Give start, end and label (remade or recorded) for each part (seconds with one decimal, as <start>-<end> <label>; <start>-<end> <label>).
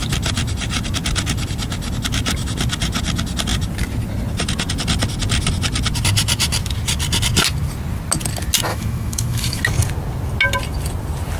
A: 0.0-8.7 recorded; 8.7-9.6 remade; 9.6-11.4 recorded